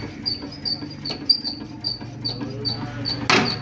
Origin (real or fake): real